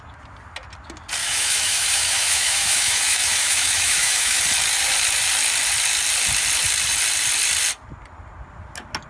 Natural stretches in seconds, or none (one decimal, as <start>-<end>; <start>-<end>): 0.0-1.2; 4.4-9.1